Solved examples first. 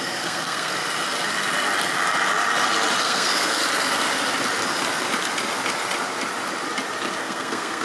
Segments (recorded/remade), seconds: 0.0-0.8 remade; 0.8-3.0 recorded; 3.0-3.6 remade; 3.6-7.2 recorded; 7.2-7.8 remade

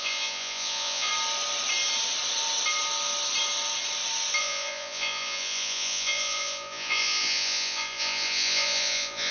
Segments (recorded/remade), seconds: 0.0-1.1 remade; 1.1-4.4 recorded; 4.4-9.3 remade

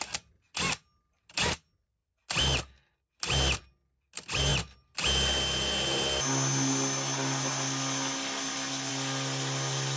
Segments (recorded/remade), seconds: 0.0-10.0 recorded

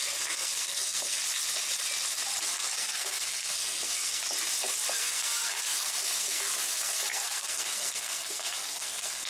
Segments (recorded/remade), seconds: 0.0-1.2 remade; 1.2-2.4 recorded; 2.4-4.2 remade; 4.2-4.9 recorded; 4.9-9.3 remade

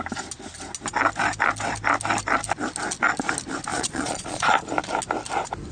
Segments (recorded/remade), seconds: 0.0-3.7 recorded; 3.7-4.5 remade; 4.5-5.7 recorded

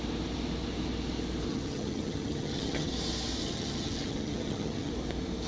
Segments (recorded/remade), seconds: 0.0-1.5 recorded; 1.5-2.9 remade; 2.9-3.4 recorded; 3.4-4.9 remade; 4.9-5.5 recorded

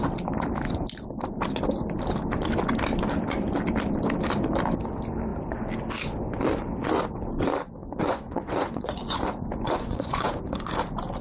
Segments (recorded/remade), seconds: 0.0-7.8 recorded; 7.8-10.4 remade; 10.4-11.2 recorded

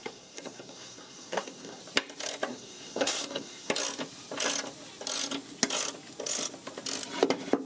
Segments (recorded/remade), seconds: 0.0-1.8 remade; 1.8-2.5 recorded; 2.5-3.7 remade; 3.7-7.7 recorded